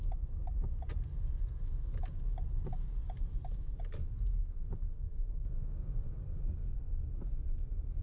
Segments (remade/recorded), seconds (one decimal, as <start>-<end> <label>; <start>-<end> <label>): 0.0-6.6 remade; 6.6-7.1 recorded; 7.1-8.0 remade

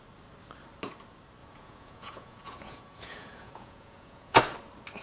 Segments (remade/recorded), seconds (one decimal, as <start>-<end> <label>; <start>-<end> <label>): 0.0-1.4 recorded; 1.4-4.4 remade; 4.4-5.0 recorded